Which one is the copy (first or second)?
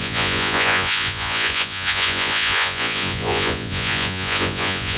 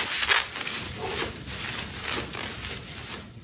first